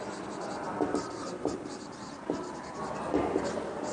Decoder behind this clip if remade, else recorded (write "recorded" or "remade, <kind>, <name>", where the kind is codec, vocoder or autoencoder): recorded